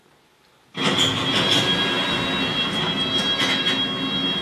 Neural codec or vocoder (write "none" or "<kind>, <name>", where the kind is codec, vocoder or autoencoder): none